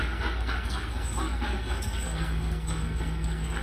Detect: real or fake fake